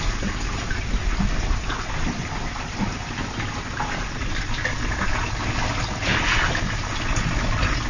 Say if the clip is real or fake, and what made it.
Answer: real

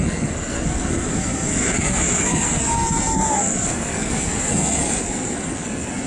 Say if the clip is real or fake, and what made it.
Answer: fake, codec, SNAC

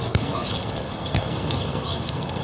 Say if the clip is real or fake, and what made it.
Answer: fake, codec, SNAC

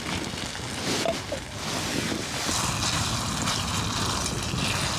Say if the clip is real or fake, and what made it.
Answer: real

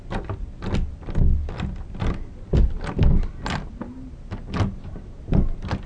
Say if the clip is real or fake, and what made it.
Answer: real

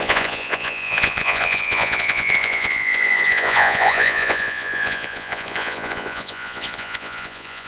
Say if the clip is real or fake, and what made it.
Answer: fake, vocoder, Vocos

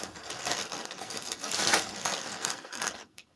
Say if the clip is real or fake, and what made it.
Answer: fake, codec, SNAC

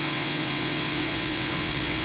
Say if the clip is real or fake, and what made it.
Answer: fake, vocoder, WaveNeXt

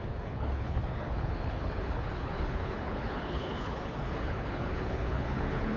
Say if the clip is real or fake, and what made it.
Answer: fake, codec, HILCodec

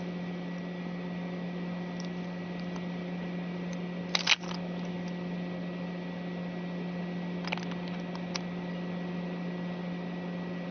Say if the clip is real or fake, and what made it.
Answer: real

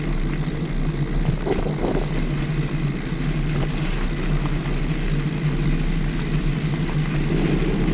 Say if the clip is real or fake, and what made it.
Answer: real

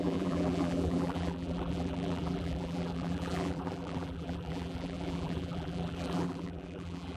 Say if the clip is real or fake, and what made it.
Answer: fake, vocoder, BigVGAN v2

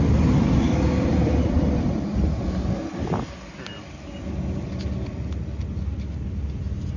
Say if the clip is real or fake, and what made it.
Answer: real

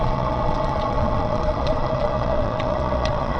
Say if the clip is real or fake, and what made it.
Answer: fake, vocoder, Vocos